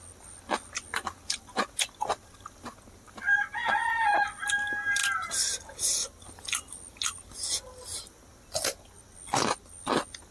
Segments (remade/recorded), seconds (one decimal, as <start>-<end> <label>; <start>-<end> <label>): 0.0-10.3 recorded